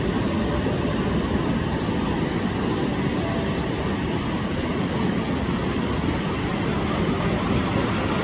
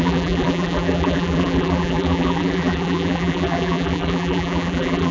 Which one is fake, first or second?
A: second